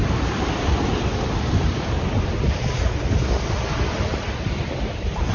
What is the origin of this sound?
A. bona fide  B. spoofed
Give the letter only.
B